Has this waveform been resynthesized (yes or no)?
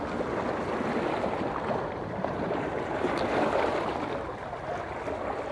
no